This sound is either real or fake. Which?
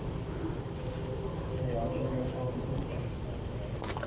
real